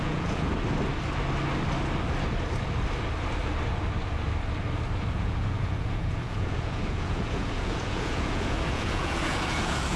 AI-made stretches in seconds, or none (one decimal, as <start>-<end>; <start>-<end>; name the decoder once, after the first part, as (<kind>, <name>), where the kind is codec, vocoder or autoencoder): 0.0-0.5 (vocoder, Vocos); 5.1-10.0